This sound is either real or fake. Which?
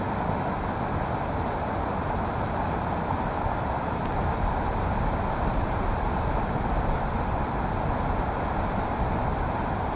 real